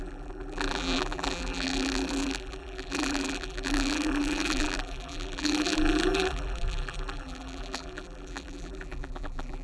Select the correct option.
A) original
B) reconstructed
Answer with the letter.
B